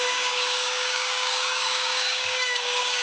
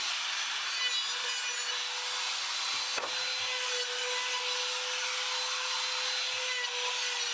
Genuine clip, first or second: second